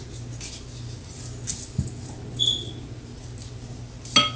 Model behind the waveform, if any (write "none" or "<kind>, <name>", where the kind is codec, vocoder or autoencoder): none